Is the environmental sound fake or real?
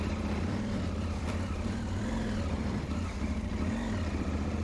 fake